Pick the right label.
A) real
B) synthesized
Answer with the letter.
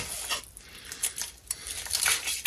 A